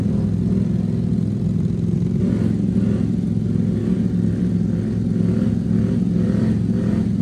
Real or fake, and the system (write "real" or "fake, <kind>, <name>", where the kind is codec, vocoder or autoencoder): real